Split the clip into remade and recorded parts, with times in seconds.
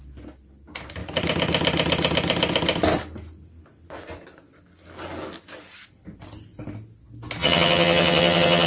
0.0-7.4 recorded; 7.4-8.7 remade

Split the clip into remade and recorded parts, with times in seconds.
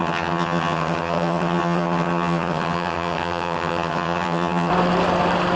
0.0-4.7 remade; 4.7-5.6 recorded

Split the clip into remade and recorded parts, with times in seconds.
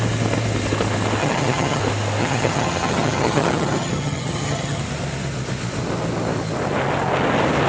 0.0-1.2 recorded; 1.2-1.8 remade; 1.8-2.2 recorded; 2.2-4.8 remade; 4.8-7.7 recorded